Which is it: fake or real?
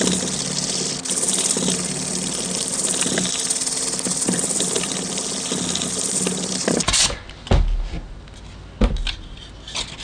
real